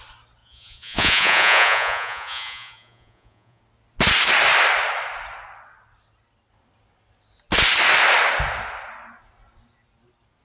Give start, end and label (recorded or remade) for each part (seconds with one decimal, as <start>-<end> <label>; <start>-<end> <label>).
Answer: 0.0-0.4 recorded; 0.4-3.6 remade; 3.6-10.4 recorded